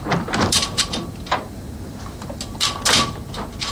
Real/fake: real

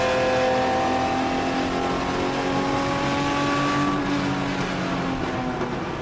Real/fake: real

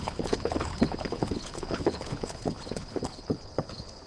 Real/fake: fake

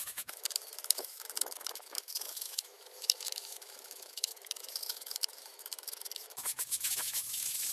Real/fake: fake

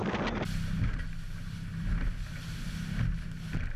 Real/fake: real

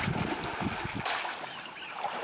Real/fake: real